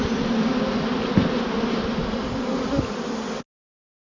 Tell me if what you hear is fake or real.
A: real